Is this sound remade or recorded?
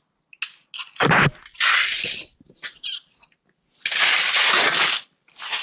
recorded